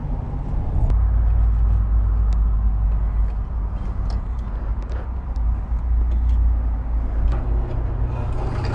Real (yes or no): yes